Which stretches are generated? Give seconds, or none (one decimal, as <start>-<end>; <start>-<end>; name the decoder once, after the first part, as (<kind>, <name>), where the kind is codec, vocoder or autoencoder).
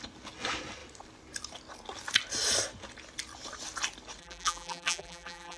4.2-5.6 (vocoder, BigVGAN v2)